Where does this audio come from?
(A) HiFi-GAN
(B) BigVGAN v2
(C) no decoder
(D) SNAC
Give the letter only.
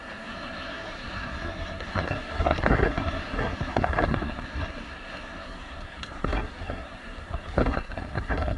D